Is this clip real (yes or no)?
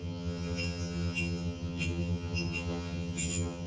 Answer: no